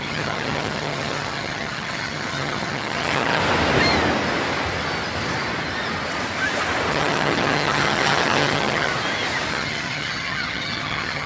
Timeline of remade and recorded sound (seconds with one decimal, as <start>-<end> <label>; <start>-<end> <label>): 0.0-3.4 remade; 3.4-6.9 recorded; 6.9-8.9 remade; 8.9-9.5 recorded; 9.5-11.3 remade